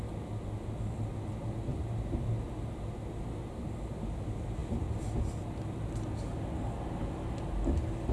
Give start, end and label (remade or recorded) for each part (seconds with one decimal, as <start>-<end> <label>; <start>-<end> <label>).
0.0-8.1 recorded